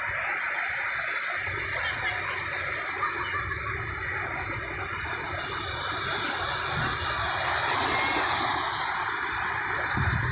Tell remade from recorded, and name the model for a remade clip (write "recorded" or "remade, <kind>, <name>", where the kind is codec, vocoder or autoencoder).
recorded